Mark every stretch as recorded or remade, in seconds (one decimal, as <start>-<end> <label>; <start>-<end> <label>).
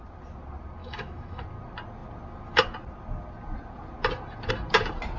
0.0-0.8 recorded; 0.8-1.4 remade; 1.4-5.2 recorded